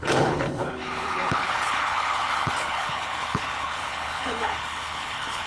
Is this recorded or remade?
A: remade